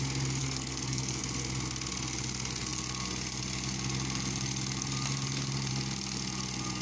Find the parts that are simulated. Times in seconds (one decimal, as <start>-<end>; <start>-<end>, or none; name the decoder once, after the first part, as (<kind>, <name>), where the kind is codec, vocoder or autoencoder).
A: 0.4-1.2 (codec, SNAC)

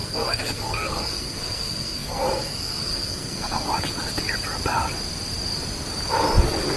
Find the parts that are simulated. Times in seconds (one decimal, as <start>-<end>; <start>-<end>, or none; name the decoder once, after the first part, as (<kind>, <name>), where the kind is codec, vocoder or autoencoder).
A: 0.0-3.7 (codec, SNAC)